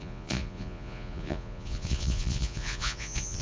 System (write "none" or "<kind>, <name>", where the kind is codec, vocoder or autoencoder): vocoder, Vocos